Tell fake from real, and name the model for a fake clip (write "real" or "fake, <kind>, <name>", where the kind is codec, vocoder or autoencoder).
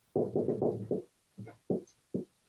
real